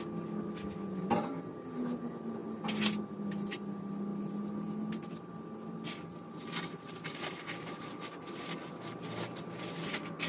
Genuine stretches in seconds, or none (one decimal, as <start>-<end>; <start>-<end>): 0.0-10.3